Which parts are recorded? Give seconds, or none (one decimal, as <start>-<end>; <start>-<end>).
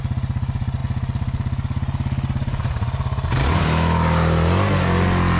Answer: 0.0-5.4